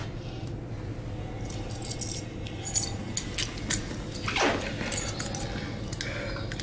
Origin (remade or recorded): recorded